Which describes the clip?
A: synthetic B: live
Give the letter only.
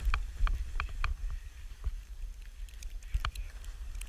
A